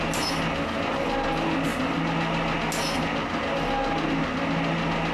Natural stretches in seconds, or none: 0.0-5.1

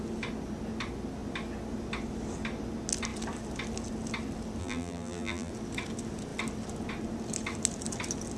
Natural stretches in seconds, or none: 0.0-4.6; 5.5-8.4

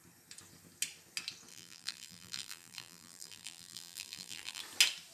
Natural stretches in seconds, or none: 0.0-1.5; 4.6-5.1